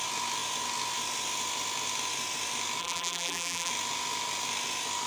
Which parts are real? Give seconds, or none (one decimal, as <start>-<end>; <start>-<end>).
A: 0.0-2.8; 3.7-5.1